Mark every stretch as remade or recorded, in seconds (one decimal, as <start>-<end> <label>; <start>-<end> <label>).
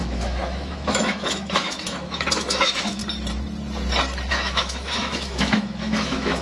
0.0-3.0 remade; 3.0-4.3 recorded; 4.3-6.4 remade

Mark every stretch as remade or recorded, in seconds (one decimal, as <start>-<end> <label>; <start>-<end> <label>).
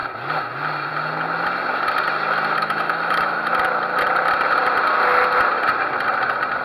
0.0-2.6 recorded; 2.6-3.5 remade; 3.5-6.6 recorded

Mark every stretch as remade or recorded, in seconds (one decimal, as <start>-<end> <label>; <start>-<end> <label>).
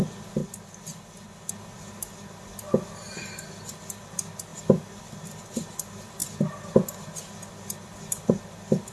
0.0-8.9 recorded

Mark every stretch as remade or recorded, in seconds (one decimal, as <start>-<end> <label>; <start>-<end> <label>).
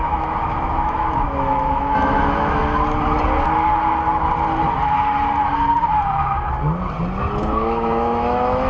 0.0-2.6 remade; 2.6-7.4 recorded; 7.4-8.7 remade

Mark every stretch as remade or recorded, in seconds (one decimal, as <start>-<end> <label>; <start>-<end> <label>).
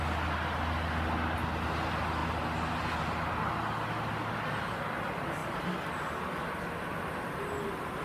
0.0-8.0 recorded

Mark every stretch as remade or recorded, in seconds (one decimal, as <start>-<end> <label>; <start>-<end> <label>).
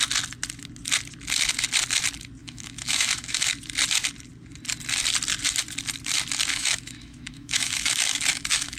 0.0-2.4 recorded; 2.4-3.5 remade; 3.5-6.5 recorded; 6.5-8.8 remade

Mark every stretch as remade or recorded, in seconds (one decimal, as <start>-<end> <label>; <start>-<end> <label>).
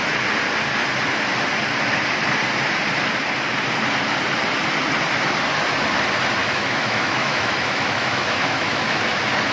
0.0-6.4 recorded; 6.4-9.0 remade; 9.0-9.5 recorded